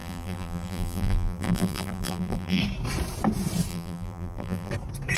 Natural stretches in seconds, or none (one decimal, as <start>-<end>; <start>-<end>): 2.6-3.7; 4.7-5.2

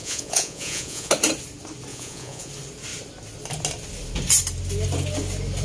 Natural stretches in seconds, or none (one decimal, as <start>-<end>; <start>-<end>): 1.1-1.9; 2.5-5.6

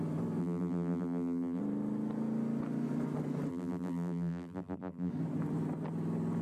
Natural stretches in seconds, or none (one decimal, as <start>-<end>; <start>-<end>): 0.0-0.4; 1.6-3.5; 5.1-6.4

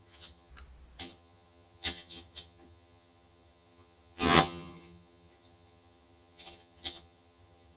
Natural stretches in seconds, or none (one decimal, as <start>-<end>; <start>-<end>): 0.5-1.0

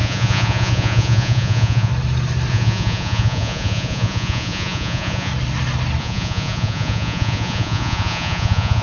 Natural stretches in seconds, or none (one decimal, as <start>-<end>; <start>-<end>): 1.9-2.5; 5.3-6.0

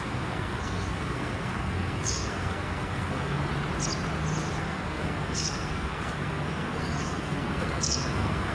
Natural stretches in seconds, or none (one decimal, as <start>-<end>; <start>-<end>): 3.5-4.6